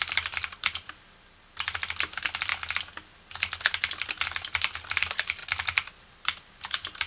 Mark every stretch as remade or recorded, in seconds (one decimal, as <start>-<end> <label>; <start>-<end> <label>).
0.0-2.5 remade; 2.5-3.9 recorded; 3.9-5.4 remade; 5.4-6.0 recorded; 6.0-7.1 remade

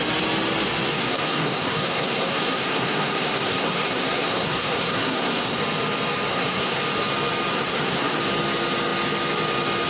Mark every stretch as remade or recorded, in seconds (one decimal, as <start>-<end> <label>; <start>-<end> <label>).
0.0-0.9 recorded; 0.9-5.6 remade; 5.6-6.3 recorded; 6.3-6.8 remade; 6.8-7.5 recorded; 7.5-8.2 remade; 8.2-9.9 recorded

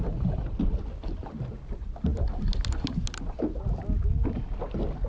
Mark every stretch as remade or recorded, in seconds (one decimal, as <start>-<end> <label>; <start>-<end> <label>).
0.0-5.1 recorded

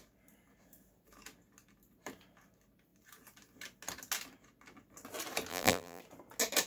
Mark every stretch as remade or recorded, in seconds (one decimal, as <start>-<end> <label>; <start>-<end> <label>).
0.0-5.5 recorded; 5.5-6.0 remade; 6.0-6.7 recorded

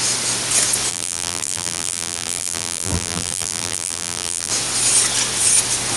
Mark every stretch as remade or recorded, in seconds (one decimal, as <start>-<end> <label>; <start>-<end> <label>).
0.0-0.9 recorded; 0.9-4.5 remade; 4.5-6.0 recorded

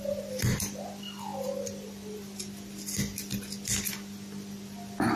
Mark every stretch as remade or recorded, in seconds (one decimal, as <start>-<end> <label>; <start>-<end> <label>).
0.0-5.2 recorded